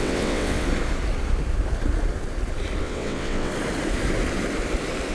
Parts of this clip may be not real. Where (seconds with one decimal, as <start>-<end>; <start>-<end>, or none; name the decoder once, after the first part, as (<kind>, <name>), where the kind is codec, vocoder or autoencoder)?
0.0-0.7 (vocoder, WaveNeXt); 2.8-3.5